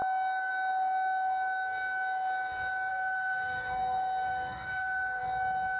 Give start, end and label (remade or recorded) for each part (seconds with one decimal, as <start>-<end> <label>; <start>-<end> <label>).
0.0-2.9 recorded; 2.9-5.2 remade; 5.2-5.8 recorded